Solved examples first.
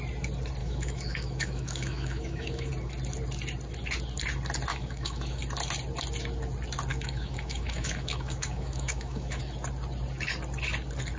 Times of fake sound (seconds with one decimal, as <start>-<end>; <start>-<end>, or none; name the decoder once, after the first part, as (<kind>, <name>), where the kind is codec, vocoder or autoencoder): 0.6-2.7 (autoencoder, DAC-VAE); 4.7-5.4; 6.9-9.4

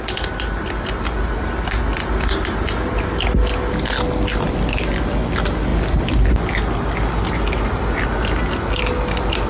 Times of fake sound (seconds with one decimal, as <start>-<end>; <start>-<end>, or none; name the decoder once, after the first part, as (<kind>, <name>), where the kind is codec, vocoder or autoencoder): none

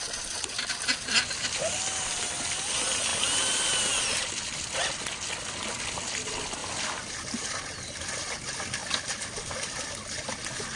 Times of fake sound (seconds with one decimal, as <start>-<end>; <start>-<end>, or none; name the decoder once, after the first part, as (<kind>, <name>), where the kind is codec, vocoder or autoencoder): none

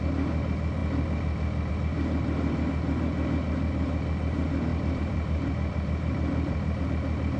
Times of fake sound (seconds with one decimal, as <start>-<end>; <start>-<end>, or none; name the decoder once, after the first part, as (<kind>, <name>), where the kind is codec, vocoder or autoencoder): 4.7-6.8 (vocoder, BigVGAN v2)

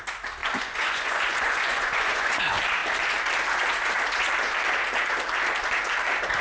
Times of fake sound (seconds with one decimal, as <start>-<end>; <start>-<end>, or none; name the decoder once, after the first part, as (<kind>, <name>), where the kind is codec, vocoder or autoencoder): 0.4-2.4 (vocoder, Vocos)

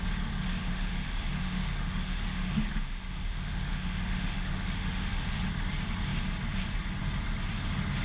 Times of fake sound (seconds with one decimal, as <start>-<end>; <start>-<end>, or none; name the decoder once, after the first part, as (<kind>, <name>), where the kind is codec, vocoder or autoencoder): 0.6-5.4 (autoencoder, DAC-VAE)